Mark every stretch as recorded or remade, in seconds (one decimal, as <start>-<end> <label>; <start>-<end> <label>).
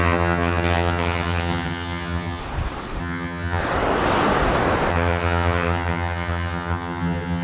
0.0-2.4 remade; 2.4-3.0 recorded; 3.0-3.6 remade; 3.6-4.9 recorded; 4.9-7.4 remade